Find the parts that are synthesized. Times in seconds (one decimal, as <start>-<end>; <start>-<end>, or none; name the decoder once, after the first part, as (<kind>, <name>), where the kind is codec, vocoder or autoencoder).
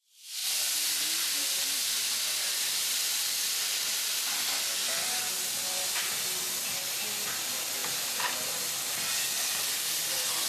none